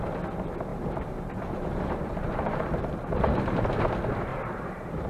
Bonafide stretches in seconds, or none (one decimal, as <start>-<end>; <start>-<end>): 0.0-0.7; 3.8-4.3